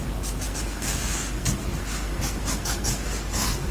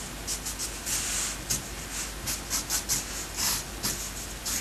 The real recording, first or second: second